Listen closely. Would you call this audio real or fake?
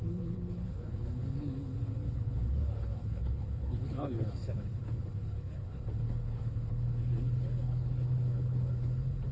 fake